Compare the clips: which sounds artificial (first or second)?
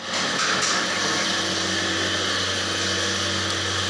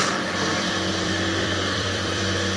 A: second